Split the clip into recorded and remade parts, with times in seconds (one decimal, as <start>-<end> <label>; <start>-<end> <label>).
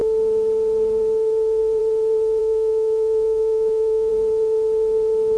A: 0.0-2.4 recorded; 2.4-4.1 remade; 4.1-5.4 recorded